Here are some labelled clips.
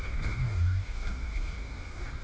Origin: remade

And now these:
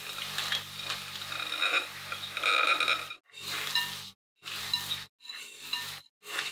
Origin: recorded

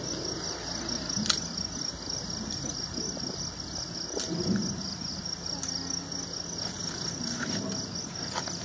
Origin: recorded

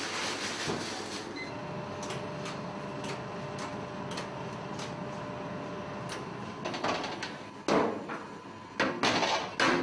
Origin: recorded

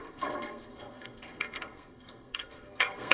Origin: remade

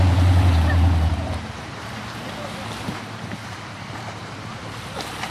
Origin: remade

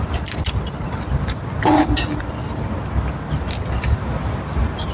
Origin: recorded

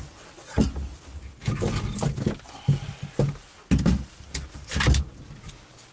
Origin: recorded